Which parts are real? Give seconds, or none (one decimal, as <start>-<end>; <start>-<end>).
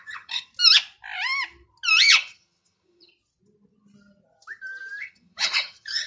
0.5-2.0; 3.1-5.0